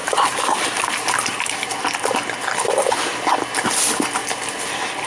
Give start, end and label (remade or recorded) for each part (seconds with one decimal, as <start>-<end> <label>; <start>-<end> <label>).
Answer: 0.0-5.1 recorded